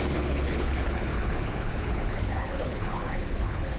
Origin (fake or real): fake